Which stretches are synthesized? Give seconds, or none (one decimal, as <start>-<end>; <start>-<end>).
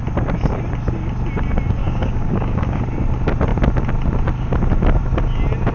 1.8-2.8